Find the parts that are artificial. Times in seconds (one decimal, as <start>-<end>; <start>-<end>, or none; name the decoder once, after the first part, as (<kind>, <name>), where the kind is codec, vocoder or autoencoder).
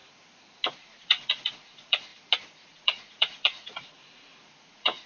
0.7-2.1 (vocoder, Vocos); 2.7-5.1